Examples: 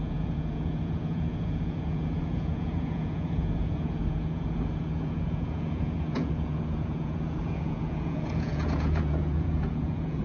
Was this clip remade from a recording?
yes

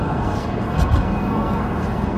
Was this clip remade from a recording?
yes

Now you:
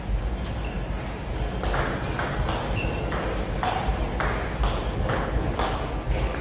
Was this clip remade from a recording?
no